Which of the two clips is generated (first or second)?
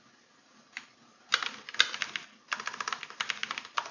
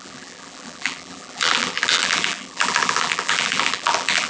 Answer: second